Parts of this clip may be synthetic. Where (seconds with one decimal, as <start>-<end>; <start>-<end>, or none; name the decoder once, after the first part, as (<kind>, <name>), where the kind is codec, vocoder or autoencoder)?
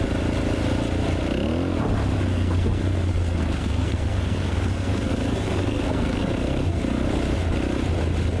2.3-6.8 (codec, SNAC)